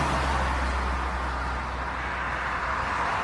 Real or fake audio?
real